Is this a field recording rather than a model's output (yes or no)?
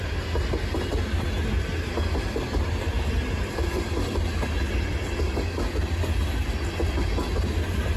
yes